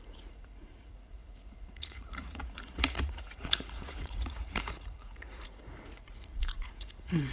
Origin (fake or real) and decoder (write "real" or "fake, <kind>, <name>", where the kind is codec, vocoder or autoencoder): fake, vocoder, Vocos